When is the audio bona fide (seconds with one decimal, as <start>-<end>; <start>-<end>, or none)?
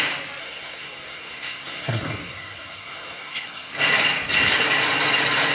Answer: 0.0-0.4; 3.7-5.5